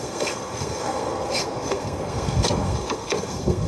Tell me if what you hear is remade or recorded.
remade